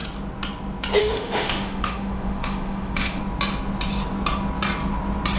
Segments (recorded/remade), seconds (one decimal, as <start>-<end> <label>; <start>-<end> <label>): 0.0-1.0 recorded; 1.0-3.2 remade; 3.2-5.4 recorded